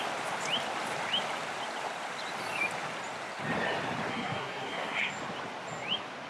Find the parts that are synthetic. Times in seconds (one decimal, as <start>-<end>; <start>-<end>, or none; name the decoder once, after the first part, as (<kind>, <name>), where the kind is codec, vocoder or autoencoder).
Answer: 4.1-5.1 (codec, SNAC)